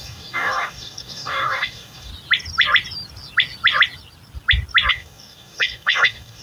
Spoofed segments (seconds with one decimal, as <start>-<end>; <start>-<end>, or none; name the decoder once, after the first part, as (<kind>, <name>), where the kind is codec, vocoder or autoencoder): 0.0-2.1 (codec, DAC); 4.9-6.4